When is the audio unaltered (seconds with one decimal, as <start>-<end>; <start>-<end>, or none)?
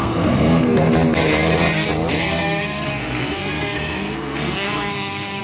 0.9-2.1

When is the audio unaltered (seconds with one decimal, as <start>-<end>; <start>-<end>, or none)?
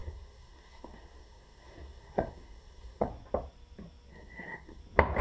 3.1-4.1; 4.8-5.2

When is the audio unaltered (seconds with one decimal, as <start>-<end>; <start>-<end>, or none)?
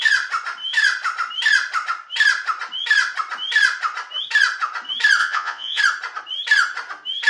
0.0-5.2; 5.8-7.3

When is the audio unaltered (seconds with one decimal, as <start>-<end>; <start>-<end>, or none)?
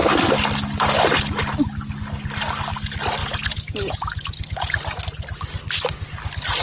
0.0-3.2; 5.0-6.6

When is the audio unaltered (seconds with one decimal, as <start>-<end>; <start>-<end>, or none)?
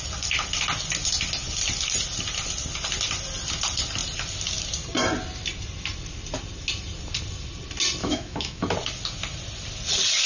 0.0-8.0; 8.6-10.3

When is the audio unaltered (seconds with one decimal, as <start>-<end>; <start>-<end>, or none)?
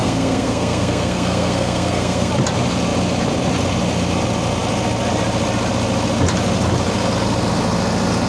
2.3-8.3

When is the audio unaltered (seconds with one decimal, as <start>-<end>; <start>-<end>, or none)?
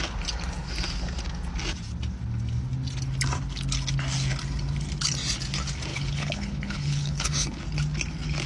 0.0-5.9; 7.6-8.5